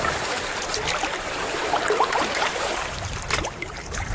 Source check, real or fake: fake